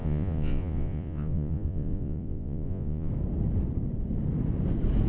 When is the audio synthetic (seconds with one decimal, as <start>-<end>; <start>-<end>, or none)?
0.0-3.1